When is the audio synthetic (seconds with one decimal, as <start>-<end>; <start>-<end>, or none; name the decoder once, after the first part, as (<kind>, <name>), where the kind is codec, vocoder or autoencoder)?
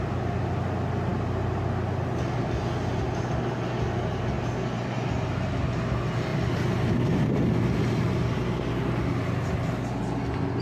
none